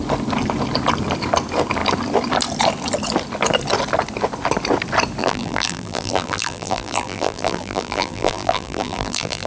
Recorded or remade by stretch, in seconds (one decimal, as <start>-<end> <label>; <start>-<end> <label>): 0.0-5.2 recorded; 5.2-9.5 remade